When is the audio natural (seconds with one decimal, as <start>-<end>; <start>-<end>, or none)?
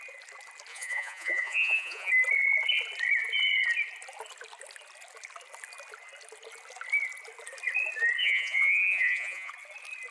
0.0-0.7; 2.1-8.2; 9.5-10.1